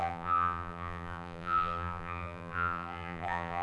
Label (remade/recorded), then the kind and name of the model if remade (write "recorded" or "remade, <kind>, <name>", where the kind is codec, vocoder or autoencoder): remade, vocoder, BigVGAN v2